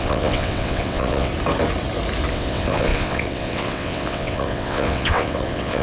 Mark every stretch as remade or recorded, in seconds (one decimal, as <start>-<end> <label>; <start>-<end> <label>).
0.0-1.3 remade; 1.3-2.3 recorded; 2.3-5.8 remade